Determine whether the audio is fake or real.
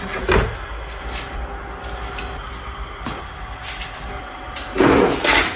real